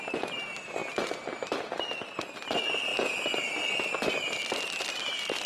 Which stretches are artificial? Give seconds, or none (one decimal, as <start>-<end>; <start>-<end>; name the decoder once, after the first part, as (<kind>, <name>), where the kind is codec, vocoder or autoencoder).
none